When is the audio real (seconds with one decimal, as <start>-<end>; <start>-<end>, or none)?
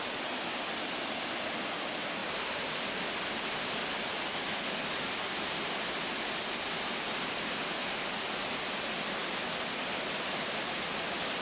0.0-11.4